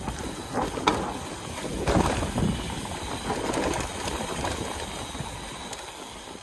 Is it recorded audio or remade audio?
recorded